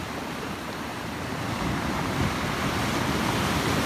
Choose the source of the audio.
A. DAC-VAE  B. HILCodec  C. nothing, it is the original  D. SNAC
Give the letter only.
C